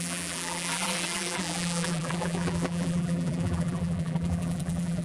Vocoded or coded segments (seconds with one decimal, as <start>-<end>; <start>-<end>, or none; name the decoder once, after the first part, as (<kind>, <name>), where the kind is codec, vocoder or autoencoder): 0.0-5.0 (vocoder, BigVGAN v2)